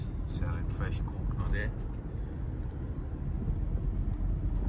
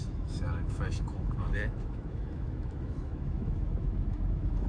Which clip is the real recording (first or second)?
first